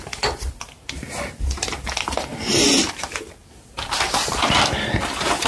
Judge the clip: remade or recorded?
recorded